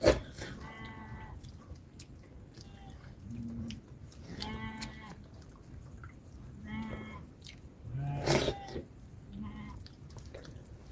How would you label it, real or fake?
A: real